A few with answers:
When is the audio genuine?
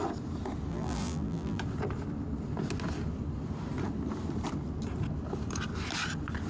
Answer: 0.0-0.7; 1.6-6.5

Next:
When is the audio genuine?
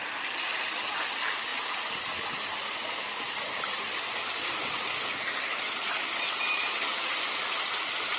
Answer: 0.0-8.2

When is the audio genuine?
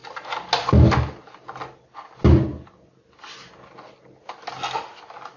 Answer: 0.0-5.4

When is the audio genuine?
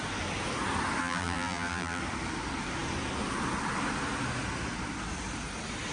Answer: 0.0-1.0; 2.0-5.9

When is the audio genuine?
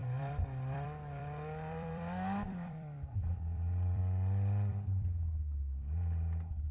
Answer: 4.0-4.7; 5.3-6.7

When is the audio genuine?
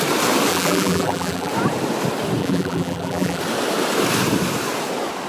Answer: 0.0-0.5; 1.5-2.4; 3.4-5.3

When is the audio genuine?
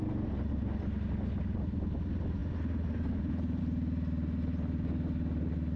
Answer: 0.0-5.8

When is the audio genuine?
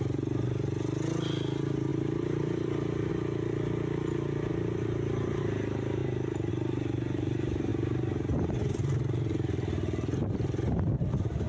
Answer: 0.0-1.9; 3.1-4.5; 5.4-11.5